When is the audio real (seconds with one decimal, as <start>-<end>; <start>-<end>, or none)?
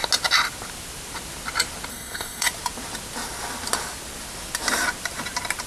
0.0-1.9; 2.5-5.7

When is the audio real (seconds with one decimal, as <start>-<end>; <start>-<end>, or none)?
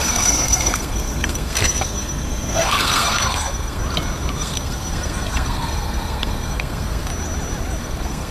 3.8-4.4; 7.1-7.8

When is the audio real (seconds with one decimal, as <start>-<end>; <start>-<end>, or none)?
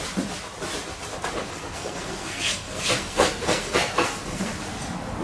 0.0-1.5; 4.6-5.2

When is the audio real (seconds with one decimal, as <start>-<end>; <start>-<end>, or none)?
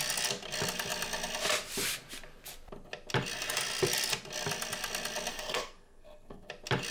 0.0-5.3; 6.5-6.9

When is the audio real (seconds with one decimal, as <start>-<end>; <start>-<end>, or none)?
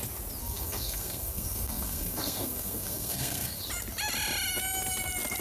0.0-0.4; 3.6-5.4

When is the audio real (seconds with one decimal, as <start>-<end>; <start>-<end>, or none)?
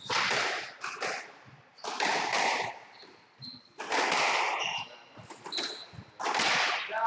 0.0-7.1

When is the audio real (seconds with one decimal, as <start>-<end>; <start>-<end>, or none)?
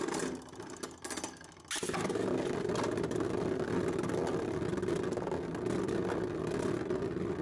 0.0-7.4